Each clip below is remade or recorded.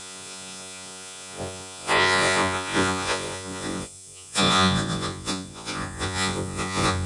remade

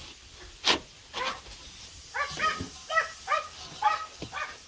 recorded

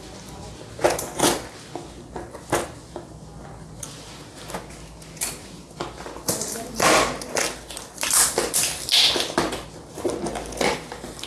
recorded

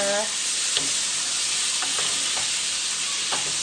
recorded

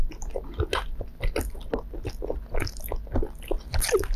recorded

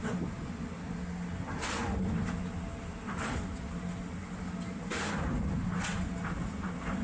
recorded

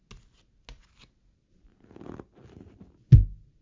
recorded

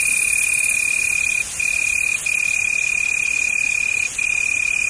recorded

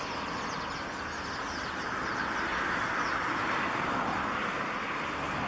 recorded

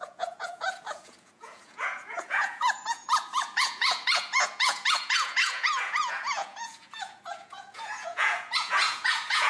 remade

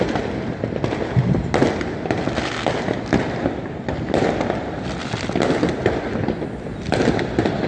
recorded